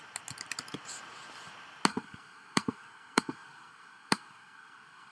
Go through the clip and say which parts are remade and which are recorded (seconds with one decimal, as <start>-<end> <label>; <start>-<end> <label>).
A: 0.0-1.9 recorded; 1.9-5.1 remade